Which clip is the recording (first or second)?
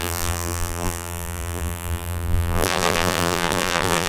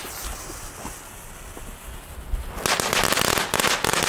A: second